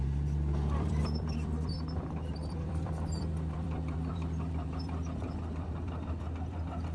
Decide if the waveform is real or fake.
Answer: fake